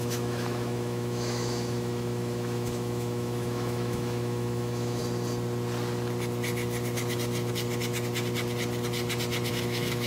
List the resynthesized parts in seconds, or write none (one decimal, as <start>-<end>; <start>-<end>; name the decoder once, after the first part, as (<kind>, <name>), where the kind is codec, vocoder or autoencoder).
0.0-5.0 (autoencoder, DAC-VAE); 9.5-10.1